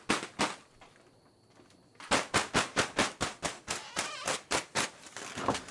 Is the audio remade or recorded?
recorded